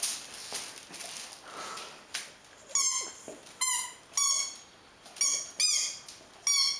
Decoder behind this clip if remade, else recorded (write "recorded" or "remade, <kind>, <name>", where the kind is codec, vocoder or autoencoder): recorded